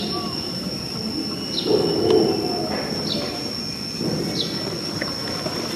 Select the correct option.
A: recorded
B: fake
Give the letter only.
A